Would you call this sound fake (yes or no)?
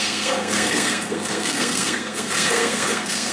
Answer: yes